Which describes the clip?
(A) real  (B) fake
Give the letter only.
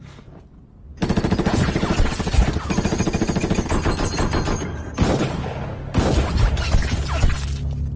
A